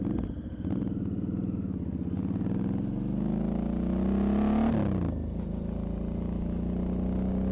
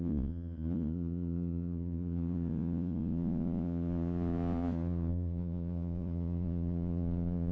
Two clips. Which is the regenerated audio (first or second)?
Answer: second